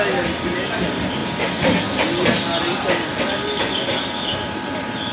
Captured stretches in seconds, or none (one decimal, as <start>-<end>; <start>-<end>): 0.0-5.1